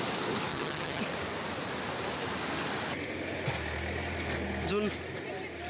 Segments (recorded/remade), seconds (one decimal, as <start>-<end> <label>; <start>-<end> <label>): 0.0-0.5 recorded; 0.5-1.0 remade; 1.0-5.7 recorded